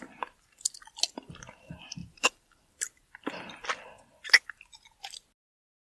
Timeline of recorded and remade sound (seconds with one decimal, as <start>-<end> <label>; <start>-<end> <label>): 0.0-2.0 recorded; 2.0-2.7 remade; 2.7-5.9 recorded